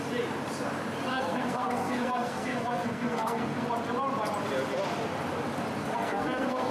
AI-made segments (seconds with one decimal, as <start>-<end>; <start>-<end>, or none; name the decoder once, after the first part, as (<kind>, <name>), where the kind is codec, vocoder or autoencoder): 1.1-3.7 (codec, SNAC); 5.8-6.7

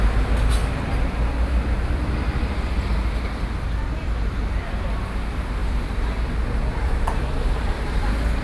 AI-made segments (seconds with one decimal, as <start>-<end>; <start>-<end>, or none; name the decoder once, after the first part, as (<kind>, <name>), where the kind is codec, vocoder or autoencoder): 0.6-1.1 (vocoder, BigVGAN v2); 5.6-7.9

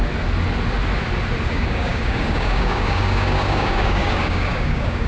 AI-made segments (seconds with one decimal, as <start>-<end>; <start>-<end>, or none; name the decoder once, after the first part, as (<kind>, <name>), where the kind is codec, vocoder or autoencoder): 1.5-5.1 (codec, DAC)

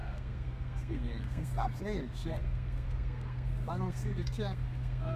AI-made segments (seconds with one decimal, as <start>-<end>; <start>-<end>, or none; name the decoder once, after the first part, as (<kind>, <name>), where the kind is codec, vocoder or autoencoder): 0.0-5.2 (codec, SNAC)

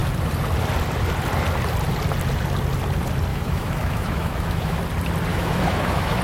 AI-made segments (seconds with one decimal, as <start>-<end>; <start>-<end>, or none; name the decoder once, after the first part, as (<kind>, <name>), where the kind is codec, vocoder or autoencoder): 3.3-4.8 (autoencoder, DAC-VAE); 5.3-6.2

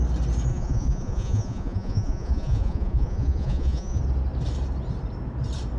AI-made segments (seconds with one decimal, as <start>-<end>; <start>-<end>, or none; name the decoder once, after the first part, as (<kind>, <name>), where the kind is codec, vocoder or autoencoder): 0.5-4.0 (vocoder, Vocos)

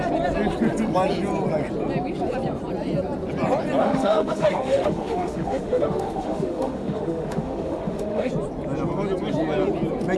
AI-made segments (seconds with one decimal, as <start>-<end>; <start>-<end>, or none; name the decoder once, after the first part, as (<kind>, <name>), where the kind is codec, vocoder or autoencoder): 3.8-8.3 (autoencoder, DAC-VAE)

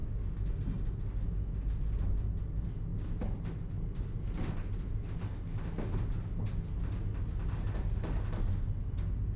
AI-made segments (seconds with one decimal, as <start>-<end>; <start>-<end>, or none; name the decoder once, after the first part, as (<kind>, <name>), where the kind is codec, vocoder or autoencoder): none